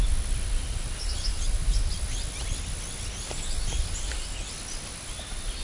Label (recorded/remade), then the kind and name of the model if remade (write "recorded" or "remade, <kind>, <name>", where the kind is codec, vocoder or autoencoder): recorded